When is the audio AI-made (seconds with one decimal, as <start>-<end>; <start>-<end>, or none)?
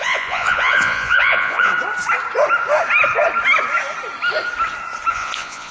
0.0-1.7; 5.1-5.7